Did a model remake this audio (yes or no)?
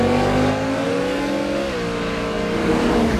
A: yes